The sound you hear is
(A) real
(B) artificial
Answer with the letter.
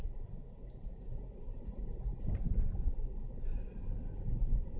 A